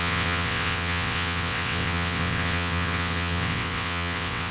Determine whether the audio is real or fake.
fake